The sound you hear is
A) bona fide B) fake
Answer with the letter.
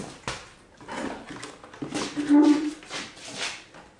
A